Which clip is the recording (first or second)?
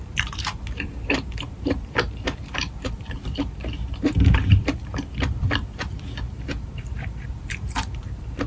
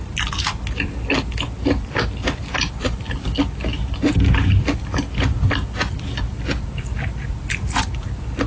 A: second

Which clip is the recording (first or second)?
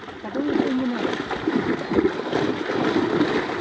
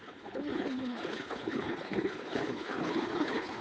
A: first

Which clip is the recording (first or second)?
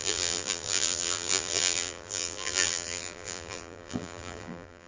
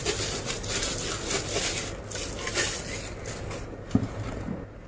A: second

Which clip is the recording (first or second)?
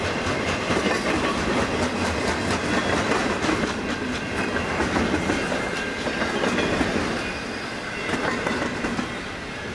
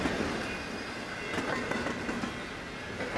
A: second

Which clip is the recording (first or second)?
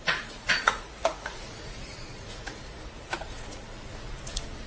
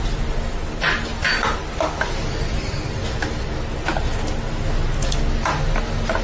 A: second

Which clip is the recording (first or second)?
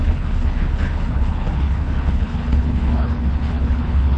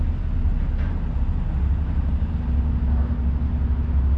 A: second